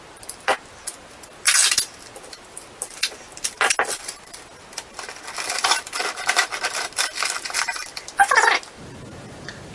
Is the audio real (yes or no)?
yes